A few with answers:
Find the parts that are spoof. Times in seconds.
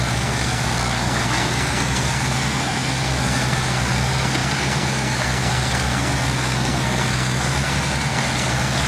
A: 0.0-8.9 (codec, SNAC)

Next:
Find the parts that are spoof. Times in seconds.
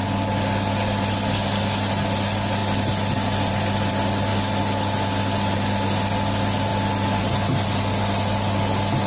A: none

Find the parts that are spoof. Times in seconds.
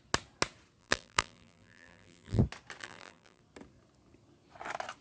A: 0.8-2.4 (vocoder, BigVGAN v2); 2.8-3.4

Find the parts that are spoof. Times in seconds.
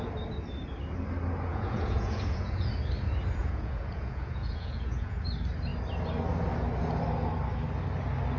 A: 1.5-2.7 (vocoder, Vocos); 3.4-5.2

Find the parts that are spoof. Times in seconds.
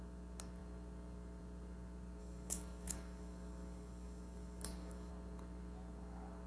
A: 2.2-5.1 (codec, DAC)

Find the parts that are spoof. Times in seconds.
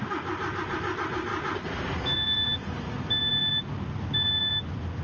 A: none